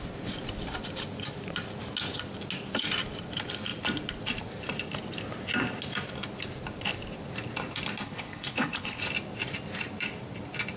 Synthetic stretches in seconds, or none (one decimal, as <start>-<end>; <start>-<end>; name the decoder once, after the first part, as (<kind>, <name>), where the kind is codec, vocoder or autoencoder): 8.0-9.0 (codec, HILCodec)